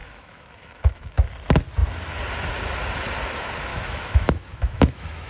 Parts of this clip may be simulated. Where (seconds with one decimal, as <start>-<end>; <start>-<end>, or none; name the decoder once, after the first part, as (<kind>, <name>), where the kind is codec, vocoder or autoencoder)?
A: 0.0-1.3 (autoencoder, DAC-VAE); 3.7-5.3